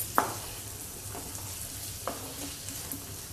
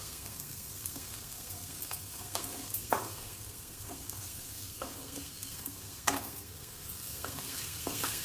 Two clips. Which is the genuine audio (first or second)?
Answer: first